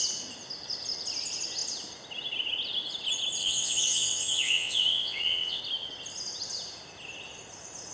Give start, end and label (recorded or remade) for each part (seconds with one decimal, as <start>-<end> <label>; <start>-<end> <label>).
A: 0.0-3.4 recorded; 3.4-5.6 remade; 5.6-7.9 recorded